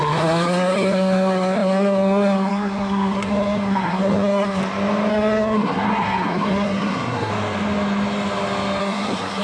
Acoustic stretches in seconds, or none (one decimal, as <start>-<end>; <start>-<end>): 4.6-5.1; 7.3-8.8